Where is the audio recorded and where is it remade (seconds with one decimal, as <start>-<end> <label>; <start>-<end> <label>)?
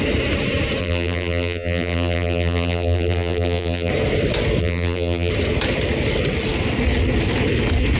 0.0-0.8 recorded; 0.8-3.9 remade; 3.9-4.6 recorded; 4.6-5.3 remade; 5.3-8.0 recorded